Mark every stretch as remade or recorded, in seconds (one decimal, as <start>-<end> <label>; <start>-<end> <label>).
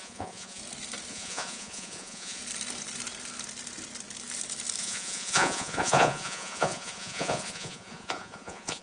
0.0-0.6 remade; 0.6-1.1 recorded; 1.1-2.4 remade; 2.4-4.8 recorded; 4.8-8.8 remade